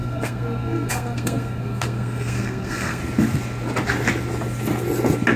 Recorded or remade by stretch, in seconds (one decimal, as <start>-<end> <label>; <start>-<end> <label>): 0.0-3.0 remade; 3.0-5.4 recorded